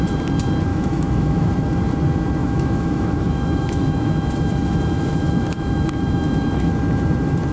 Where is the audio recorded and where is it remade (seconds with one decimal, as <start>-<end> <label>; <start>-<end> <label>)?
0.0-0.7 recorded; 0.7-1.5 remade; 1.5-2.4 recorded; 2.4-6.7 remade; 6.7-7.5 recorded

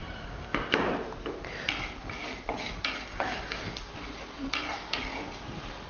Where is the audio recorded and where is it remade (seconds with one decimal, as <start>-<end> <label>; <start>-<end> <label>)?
0.0-0.9 remade; 0.9-3.1 recorded; 3.1-3.6 remade; 3.6-5.9 recorded

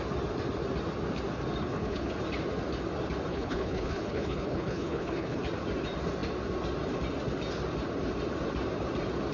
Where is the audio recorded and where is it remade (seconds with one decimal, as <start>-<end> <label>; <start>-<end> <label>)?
0.0-1.6 recorded; 1.6-2.1 remade; 2.1-3.3 recorded; 3.3-5.4 remade; 5.4-9.3 recorded

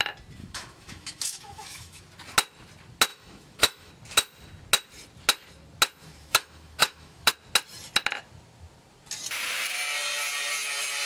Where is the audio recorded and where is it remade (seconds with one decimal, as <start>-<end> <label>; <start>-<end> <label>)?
0.0-0.4 recorded; 0.4-2.0 remade; 2.0-3.1 recorded; 3.1-3.9 remade; 3.9-6.0 recorded; 6.0-7.3 remade; 7.3-11.1 recorded